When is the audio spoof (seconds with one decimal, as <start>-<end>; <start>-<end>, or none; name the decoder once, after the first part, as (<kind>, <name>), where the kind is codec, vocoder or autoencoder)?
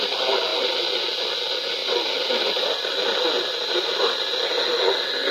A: 1.8-4.3 (vocoder, BigVGAN v2)